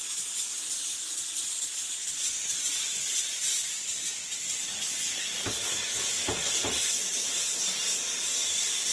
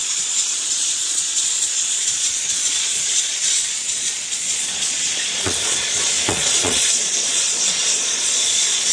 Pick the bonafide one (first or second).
first